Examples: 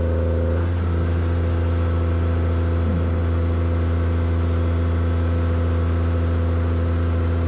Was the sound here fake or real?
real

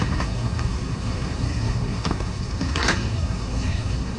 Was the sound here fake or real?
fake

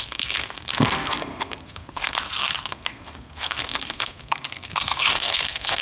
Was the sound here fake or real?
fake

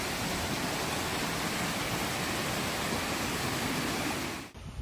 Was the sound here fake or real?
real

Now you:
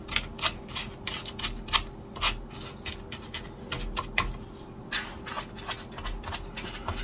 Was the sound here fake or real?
real